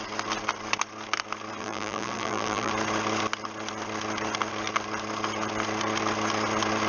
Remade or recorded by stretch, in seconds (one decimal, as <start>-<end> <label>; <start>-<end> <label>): 0.0-1.6 recorded; 1.6-2.7 remade; 2.7-6.9 recorded